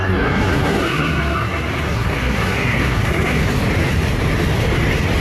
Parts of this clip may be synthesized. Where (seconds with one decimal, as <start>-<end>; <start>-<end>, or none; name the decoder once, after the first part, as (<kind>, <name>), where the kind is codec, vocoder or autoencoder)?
0.0-3.4 (codec, SNAC)